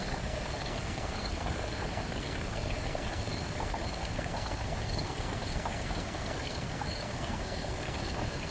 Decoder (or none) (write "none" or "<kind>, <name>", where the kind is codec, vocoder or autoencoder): codec, SNAC